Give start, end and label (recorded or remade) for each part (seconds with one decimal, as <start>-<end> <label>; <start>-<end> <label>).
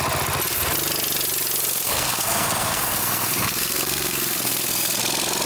0.0-1.7 recorded; 1.7-5.0 remade; 5.0-5.5 recorded